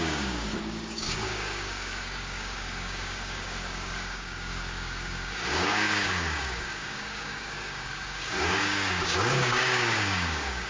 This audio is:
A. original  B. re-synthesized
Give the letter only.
B